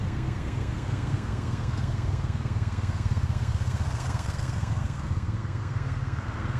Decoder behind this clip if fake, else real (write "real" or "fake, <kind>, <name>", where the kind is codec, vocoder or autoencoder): fake, codec, SNAC